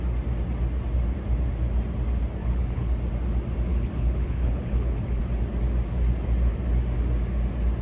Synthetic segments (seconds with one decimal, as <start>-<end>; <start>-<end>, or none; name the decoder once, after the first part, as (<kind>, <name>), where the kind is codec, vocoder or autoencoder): 2.4-2.9 (codec, HILCodec); 3.7-5.2